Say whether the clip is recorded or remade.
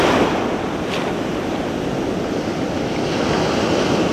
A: recorded